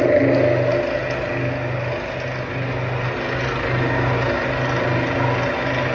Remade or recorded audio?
recorded